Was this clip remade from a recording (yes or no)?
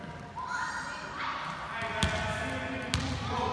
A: no